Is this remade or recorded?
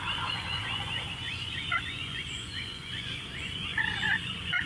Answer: remade